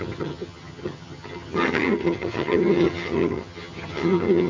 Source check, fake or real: fake